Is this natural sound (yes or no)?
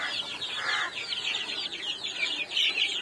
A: yes